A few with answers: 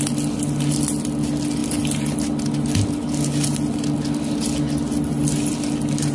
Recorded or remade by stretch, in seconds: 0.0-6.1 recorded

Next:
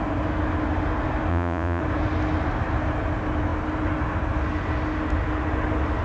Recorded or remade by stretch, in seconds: 0.0-1.3 recorded; 1.3-1.8 remade; 1.8-6.0 recorded

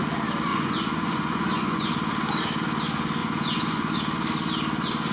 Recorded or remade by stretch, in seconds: 0.0-0.5 recorded; 0.5-1.9 remade; 1.9-3.2 recorded; 3.2-3.9 remade; 3.9-5.1 recorded

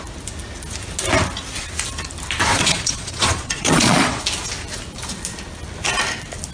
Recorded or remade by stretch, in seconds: 0.0-2.5 recorded; 2.5-4.2 remade; 4.2-6.5 recorded

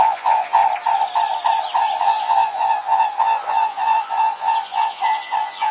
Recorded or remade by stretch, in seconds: 0.0-0.6 remade; 0.6-2.0 recorded; 2.0-5.7 remade

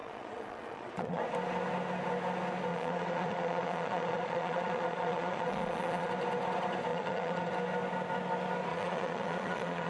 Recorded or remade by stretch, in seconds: 0.0-1.2 remade; 1.2-2.7 recorded; 2.7-6.1 remade; 6.1-6.9 recorded; 6.9-7.5 remade; 7.5-8.7 recorded; 8.7-9.9 remade